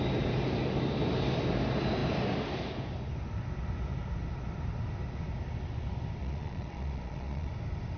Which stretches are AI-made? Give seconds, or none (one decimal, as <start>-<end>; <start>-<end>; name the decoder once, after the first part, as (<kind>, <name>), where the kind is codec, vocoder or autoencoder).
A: 6.2-7.5 (vocoder, Vocos)